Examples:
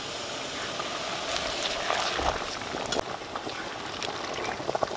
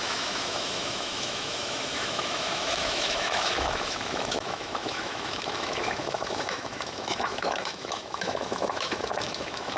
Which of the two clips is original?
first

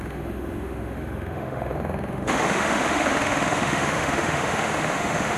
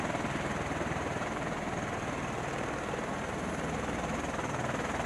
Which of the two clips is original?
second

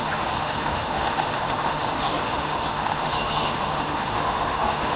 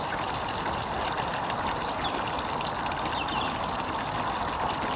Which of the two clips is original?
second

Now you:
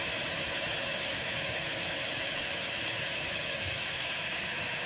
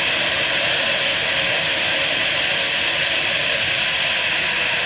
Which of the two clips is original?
second